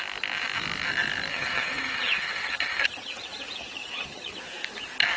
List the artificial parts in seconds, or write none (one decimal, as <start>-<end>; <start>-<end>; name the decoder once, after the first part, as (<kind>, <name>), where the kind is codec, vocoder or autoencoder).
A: 1.3-4.4 (vocoder, HiFi-GAN)

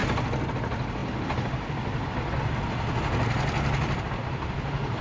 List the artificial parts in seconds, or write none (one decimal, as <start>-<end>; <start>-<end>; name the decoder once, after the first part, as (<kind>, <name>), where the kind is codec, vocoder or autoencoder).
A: none

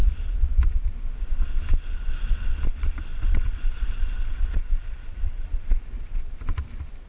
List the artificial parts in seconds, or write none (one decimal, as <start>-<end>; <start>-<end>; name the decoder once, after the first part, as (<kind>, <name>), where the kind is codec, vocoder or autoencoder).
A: 3.1-6.3 (vocoder, Vocos)

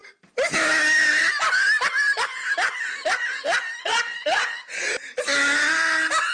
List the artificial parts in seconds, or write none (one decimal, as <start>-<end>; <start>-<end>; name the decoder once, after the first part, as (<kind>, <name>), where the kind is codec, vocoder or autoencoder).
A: 3.8-4.7 (vocoder, WaveNeXt)